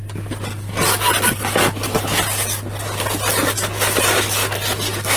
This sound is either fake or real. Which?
real